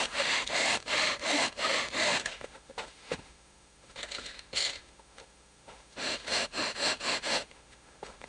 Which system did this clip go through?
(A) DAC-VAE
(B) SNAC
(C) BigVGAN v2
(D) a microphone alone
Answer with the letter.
A